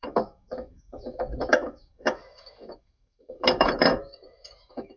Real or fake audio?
fake